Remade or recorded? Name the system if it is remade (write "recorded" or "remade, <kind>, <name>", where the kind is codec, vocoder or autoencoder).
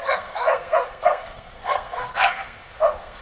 remade, codec, SNAC